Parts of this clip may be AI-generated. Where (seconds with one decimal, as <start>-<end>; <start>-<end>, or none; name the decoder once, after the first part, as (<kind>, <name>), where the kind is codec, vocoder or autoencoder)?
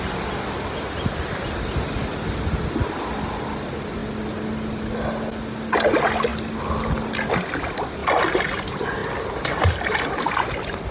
none